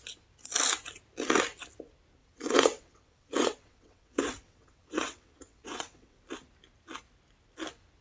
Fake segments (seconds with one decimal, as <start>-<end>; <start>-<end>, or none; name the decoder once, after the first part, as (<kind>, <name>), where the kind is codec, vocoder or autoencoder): 2.2-6.2 (vocoder, WaveNeXt)